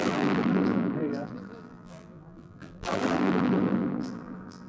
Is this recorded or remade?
remade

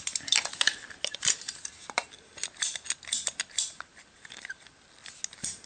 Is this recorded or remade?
recorded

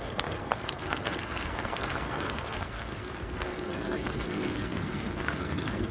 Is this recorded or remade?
remade